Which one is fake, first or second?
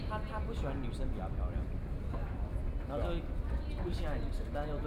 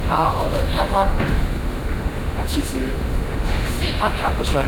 second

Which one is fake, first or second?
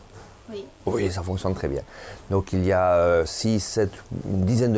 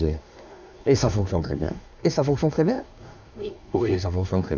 second